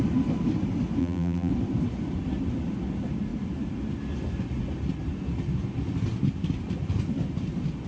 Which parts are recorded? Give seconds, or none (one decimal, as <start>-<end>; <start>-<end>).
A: 0.0-1.0; 1.5-7.9